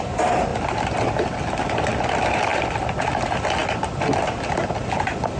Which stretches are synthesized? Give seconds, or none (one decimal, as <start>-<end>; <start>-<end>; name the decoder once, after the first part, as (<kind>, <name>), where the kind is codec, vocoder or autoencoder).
0.0-0.5 (vocoder, BigVGAN v2); 2.1-3.6; 4.9-5.4